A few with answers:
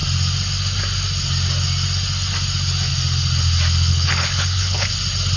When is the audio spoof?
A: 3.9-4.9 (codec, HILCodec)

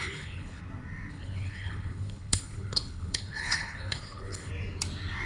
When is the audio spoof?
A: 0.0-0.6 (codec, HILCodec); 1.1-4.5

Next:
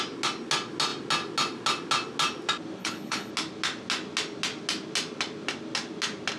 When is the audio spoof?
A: 2.8-3.3 (codec, HILCodec)

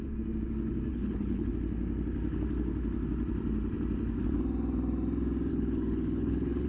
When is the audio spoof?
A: 0.9-1.5 (codec, HILCodec); 5.5-6.7